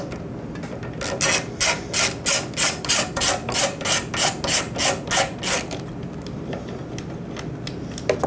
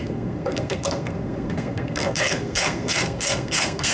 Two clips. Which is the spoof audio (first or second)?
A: second